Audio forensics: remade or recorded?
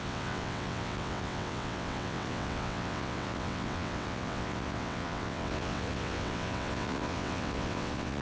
remade